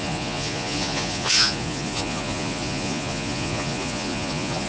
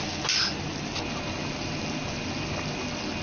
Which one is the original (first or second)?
second